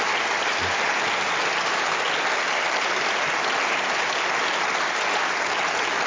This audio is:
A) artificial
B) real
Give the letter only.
B